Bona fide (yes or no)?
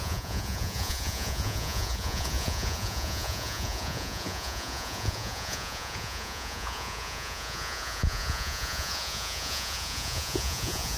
no